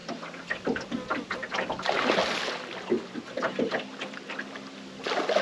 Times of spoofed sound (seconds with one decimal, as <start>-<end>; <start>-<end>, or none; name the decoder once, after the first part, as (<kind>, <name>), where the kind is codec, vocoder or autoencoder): none